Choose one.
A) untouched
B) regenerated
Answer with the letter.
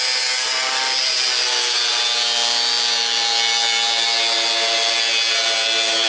A